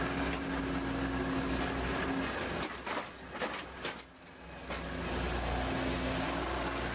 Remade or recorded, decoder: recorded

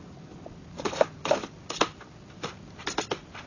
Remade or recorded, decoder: recorded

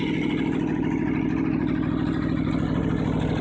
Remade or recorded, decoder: recorded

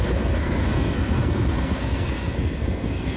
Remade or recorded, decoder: remade, codec, SNAC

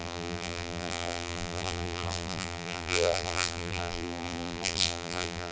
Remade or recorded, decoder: remade, vocoder, BigVGAN v2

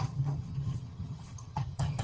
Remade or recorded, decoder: remade, vocoder, HiFi-GAN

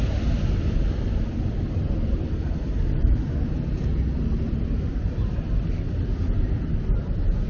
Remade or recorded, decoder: recorded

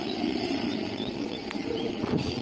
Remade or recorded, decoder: remade, vocoder, Vocos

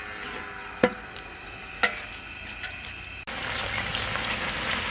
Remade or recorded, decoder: recorded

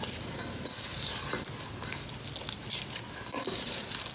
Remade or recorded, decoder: recorded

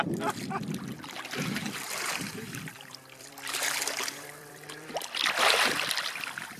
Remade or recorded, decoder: remade, vocoder, BigVGAN v2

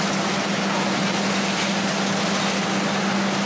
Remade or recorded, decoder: recorded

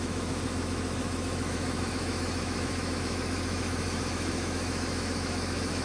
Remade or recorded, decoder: remade, autoencoder, DAC-VAE